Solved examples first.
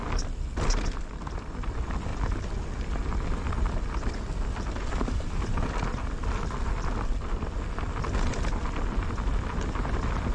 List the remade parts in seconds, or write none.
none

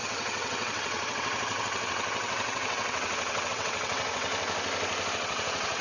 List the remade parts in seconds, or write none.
0.0-4.3 (vocoder, WaveNeXt); 5.1-5.8

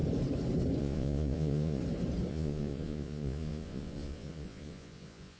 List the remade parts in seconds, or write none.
0.8-1.8 (vocoder, Vocos); 2.3-5.4